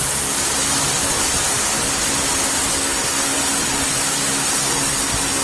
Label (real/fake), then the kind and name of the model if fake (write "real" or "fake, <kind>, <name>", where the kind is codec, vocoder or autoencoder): real